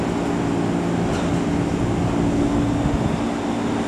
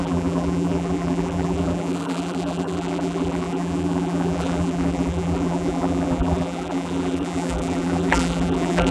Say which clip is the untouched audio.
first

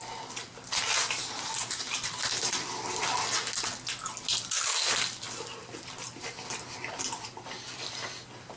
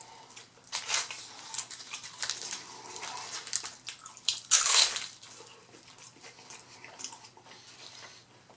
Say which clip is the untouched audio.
first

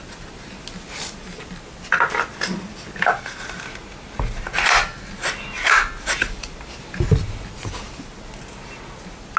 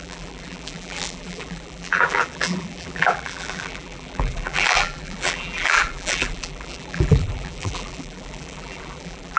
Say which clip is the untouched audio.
first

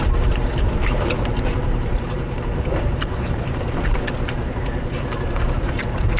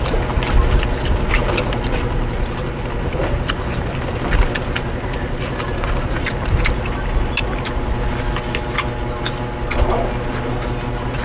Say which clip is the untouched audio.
second